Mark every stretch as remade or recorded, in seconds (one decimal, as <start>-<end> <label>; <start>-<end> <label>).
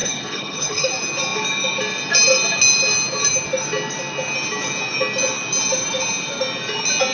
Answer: 0.0-0.9 remade; 0.9-7.1 recorded